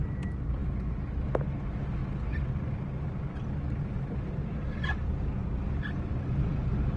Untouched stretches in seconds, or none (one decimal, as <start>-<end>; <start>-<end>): 0.0-7.0